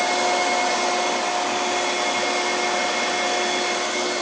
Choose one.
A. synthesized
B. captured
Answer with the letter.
B